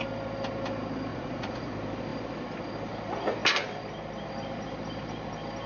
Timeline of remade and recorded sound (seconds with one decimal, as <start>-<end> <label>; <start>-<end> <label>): 0.0-1.1 recorded; 1.1-1.7 remade; 1.7-5.7 recorded